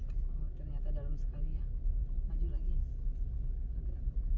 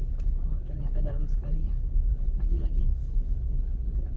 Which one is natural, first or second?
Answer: first